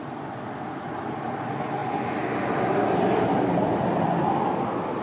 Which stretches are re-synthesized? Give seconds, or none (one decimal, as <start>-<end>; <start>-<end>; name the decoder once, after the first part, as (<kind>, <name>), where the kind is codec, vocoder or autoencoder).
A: none